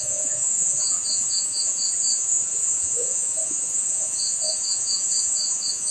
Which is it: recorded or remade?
remade